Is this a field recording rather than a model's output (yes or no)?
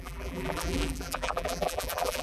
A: no